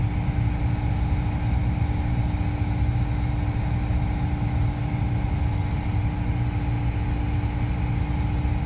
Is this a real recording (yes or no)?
yes